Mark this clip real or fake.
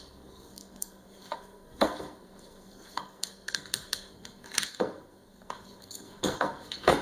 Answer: fake